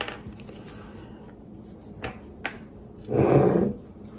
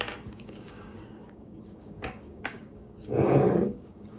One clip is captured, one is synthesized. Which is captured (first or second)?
first